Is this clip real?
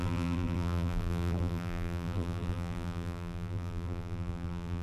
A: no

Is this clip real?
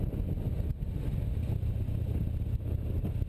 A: yes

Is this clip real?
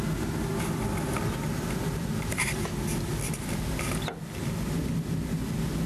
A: yes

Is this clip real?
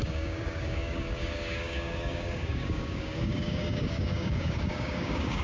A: no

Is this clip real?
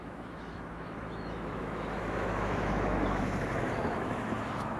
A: no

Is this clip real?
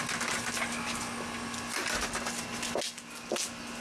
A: yes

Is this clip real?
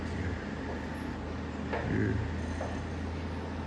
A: yes